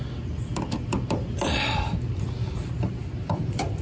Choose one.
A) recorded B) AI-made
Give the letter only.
A